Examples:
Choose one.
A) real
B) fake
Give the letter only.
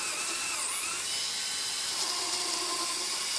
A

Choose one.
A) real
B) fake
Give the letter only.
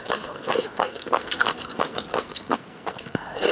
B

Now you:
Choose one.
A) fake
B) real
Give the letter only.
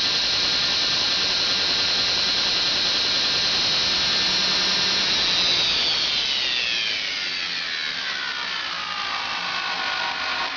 B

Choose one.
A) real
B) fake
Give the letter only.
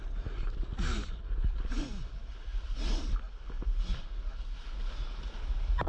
A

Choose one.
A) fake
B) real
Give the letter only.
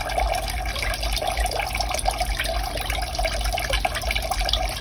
B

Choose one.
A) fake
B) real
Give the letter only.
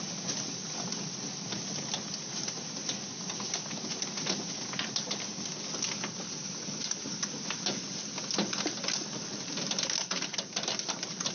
B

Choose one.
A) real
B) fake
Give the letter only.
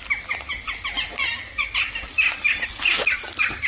A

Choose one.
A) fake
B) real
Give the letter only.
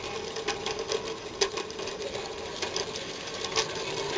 B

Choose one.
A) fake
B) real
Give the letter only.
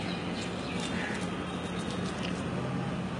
B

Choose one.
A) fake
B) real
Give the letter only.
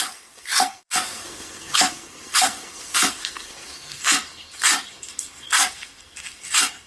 A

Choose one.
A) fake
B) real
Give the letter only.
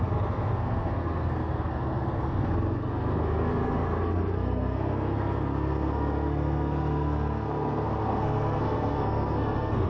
A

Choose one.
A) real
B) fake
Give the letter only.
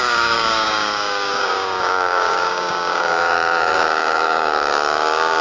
B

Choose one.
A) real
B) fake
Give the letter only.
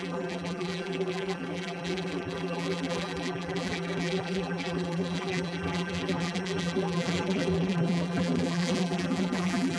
B